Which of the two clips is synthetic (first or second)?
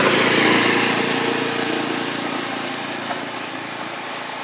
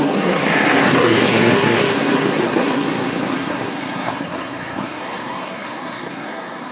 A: second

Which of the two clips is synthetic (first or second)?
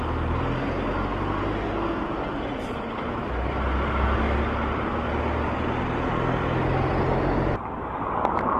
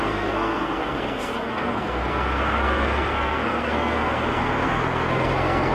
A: second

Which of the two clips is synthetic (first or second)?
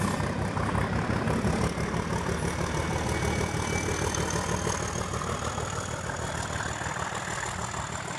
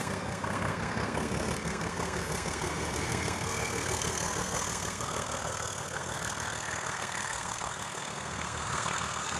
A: second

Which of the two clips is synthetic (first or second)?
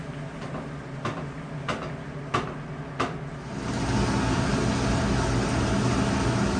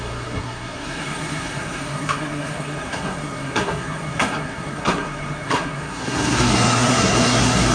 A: second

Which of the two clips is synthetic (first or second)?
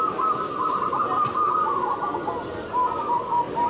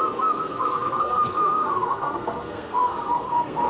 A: second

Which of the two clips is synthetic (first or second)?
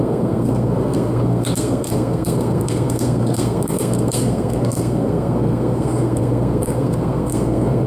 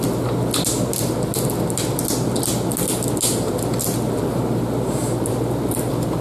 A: first